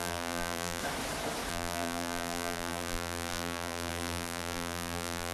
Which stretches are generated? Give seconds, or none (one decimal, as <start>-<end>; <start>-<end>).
0.0-0.8; 1.5-5.3